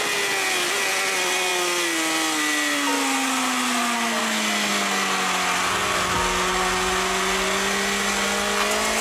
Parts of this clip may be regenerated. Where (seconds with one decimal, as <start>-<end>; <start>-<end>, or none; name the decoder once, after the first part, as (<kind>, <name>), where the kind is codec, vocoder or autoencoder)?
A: none